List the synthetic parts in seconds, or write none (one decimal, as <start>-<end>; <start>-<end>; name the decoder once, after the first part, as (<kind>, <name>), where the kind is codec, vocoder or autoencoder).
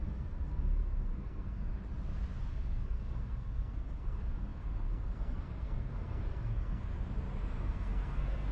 0.0-1.7 (codec, SNAC); 2.5-6.9; 7.4-8.5